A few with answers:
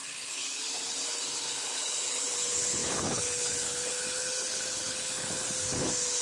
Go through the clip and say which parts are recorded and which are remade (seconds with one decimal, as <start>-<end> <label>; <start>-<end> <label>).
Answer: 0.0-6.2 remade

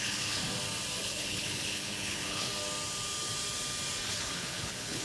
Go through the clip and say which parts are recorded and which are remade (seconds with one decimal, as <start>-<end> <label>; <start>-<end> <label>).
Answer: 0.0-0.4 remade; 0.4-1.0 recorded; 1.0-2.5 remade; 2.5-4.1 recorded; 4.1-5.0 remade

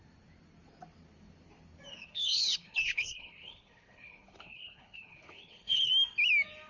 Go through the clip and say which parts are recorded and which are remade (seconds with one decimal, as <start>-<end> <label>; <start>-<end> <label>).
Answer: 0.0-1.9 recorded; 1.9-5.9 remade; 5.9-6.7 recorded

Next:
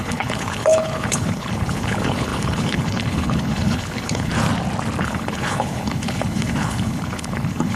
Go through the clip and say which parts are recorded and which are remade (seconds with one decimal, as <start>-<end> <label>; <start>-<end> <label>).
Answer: 0.0-4.3 remade; 4.3-5.0 recorded; 5.0-7.8 remade

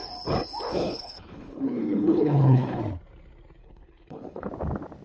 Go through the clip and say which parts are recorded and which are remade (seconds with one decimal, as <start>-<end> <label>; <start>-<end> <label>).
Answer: 0.0-0.7 recorded; 0.7-2.8 remade; 2.8-3.6 recorded; 3.6-4.5 remade; 4.5-5.0 recorded

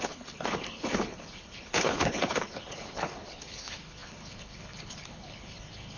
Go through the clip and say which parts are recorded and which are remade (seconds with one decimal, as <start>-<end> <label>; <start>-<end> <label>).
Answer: 0.0-6.0 remade

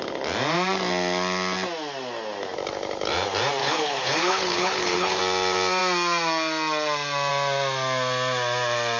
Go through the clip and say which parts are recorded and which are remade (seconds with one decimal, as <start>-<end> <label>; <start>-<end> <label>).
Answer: 0.0-3.6 recorded; 3.6-5.2 remade; 5.2-9.0 recorded

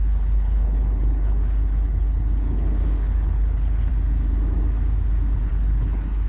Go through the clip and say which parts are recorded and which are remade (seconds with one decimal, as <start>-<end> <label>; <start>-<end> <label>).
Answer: 0.0-3.9 remade; 3.9-5.5 recorded; 5.5-6.3 remade